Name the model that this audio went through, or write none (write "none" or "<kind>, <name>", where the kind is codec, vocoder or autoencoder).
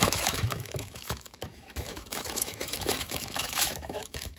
autoencoder, DAC-VAE